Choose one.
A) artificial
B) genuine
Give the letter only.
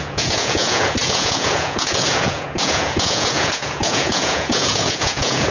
A